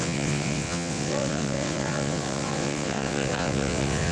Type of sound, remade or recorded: remade